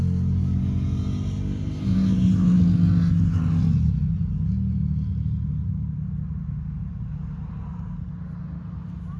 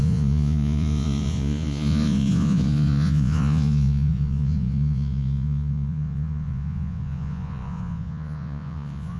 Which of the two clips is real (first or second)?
first